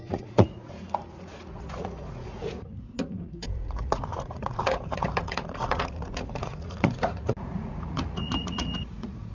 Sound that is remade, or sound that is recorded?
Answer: remade